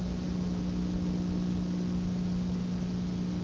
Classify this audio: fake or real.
real